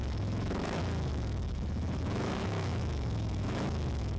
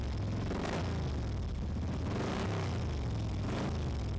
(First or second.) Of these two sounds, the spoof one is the first